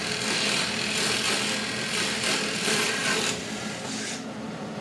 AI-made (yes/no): no